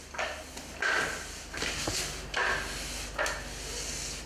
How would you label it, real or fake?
real